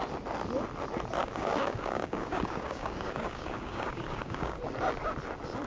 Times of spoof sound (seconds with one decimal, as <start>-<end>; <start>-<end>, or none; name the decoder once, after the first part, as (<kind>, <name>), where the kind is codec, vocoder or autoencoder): 1.2-4.6 (codec, DAC)